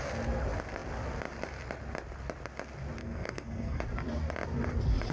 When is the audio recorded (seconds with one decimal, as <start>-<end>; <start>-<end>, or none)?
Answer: 0.0-3.0; 3.8-5.1